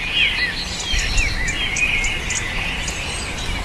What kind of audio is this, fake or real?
real